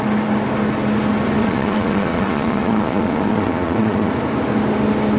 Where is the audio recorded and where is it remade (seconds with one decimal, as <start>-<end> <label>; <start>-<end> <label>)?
0.0-1.4 recorded; 1.4-4.1 remade; 4.1-5.2 recorded